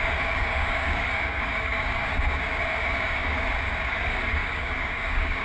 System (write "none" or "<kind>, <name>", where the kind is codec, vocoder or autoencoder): codec, DAC